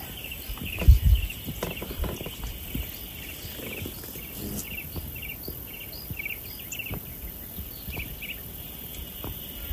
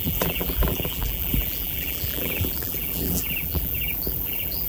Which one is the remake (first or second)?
second